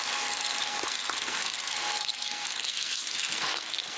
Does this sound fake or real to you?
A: fake